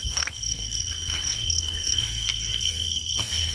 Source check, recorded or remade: remade